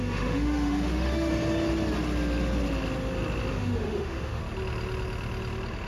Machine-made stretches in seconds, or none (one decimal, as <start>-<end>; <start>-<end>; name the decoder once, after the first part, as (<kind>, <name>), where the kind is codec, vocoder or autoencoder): 0.0-1.3 (autoencoder, DAC-VAE); 3.5-4.4